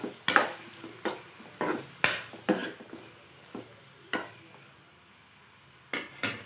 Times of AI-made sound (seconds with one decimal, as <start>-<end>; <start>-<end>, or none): none